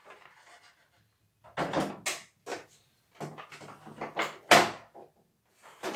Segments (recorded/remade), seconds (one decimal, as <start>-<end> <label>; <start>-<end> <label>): 0.0-6.0 recorded